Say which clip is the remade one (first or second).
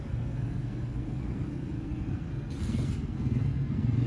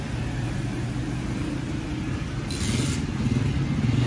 first